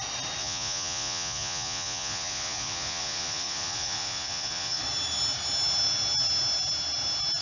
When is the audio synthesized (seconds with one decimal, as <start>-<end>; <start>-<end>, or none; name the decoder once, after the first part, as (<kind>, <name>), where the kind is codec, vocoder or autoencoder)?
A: 0.4-4.8 (vocoder, Vocos)